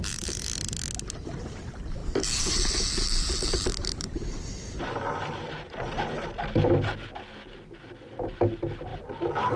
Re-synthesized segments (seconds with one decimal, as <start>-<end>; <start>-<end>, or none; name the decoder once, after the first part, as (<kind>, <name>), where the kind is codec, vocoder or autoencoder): 2.0-5.9 (vocoder, BigVGAN v2)